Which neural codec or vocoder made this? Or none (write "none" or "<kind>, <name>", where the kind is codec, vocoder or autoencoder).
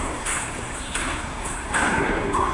codec, SNAC